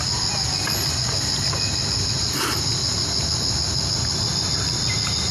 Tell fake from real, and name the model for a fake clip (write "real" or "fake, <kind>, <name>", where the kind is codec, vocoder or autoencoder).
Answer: real